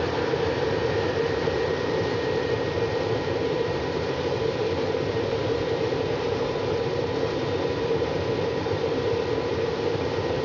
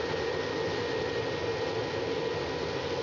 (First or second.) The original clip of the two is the second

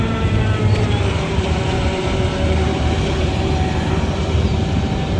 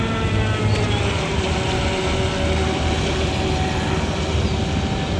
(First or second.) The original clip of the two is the second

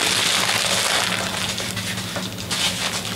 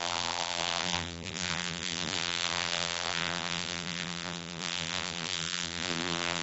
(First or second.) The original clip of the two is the first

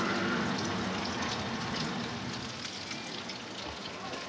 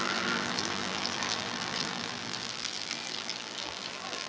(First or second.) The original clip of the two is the first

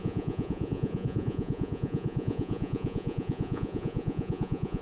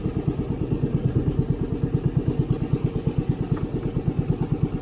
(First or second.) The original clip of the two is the second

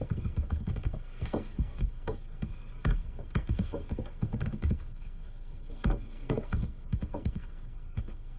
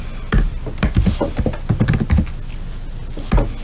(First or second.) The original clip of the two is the second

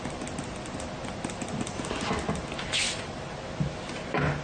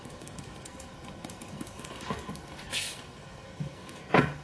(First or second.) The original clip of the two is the first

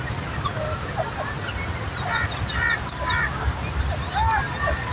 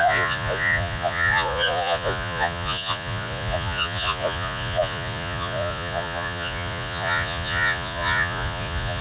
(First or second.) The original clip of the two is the first